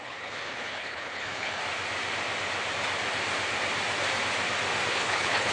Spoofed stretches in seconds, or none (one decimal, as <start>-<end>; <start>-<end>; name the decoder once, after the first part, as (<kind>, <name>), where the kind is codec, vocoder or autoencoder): 0.0-1.6 (codec, HILCodec); 4.9-5.5